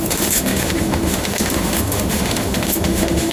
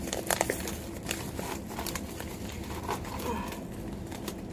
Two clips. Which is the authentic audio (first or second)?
second